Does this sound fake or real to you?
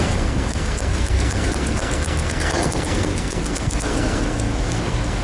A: fake